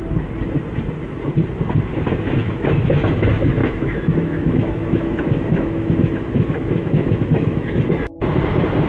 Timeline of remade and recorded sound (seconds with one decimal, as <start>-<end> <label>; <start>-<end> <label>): 0.0-2.4 recorded; 2.4-3.0 remade; 3.0-3.6 recorded; 3.6-7.8 remade; 7.8-8.9 recorded